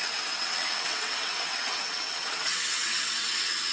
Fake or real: fake